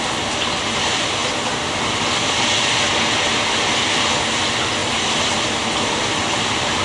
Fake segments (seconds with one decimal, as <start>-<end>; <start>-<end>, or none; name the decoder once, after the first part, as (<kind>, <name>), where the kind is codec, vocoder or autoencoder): none